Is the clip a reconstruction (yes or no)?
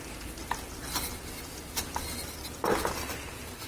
no